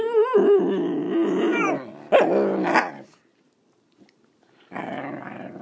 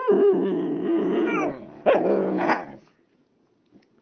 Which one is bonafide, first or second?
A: first